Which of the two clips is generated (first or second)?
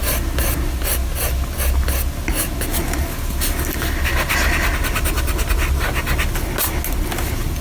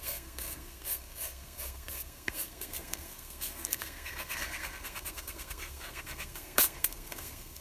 second